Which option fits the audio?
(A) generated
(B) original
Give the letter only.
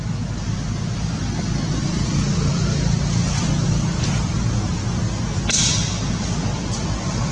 B